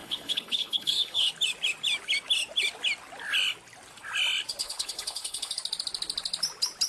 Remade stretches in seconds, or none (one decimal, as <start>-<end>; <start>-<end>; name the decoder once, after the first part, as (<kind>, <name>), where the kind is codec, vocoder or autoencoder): 0.0-1.3 (codec, HILCodec); 4.6-5.5